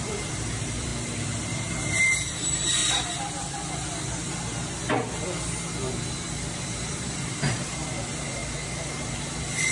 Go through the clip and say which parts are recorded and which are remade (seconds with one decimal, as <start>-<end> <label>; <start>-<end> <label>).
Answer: 0.0-0.9 remade; 0.9-1.8 recorded; 1.8-2.8 remade; 2.8-6.7 recorded; 6.7-8.4 remade; 8.4-9.0 recorded; 9.0-9.7 remade